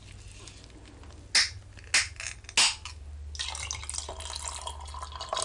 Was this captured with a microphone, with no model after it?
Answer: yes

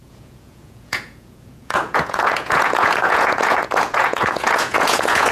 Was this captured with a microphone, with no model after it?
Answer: no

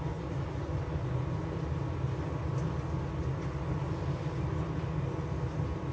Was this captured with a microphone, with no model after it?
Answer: yes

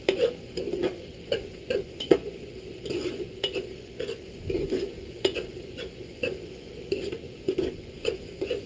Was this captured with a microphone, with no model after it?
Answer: no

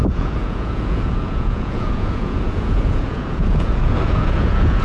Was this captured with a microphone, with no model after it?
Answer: no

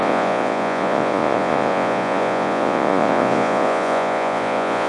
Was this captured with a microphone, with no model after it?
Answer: no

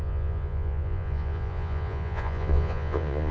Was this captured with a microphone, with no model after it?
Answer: no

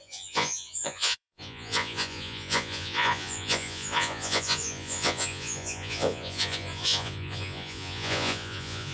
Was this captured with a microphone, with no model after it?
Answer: no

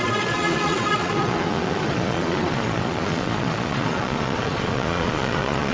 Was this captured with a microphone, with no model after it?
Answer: no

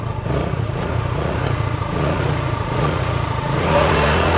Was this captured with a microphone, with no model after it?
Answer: no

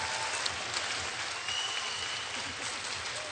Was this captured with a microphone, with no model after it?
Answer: yes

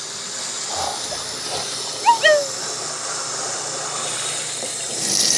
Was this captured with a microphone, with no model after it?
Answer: yes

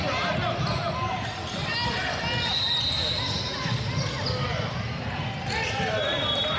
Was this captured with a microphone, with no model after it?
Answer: yes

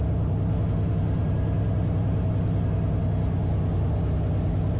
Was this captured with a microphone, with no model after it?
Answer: yes